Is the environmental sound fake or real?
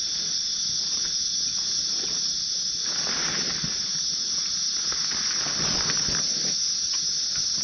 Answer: real